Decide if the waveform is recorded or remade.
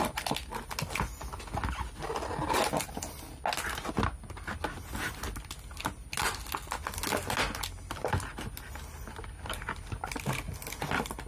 recorded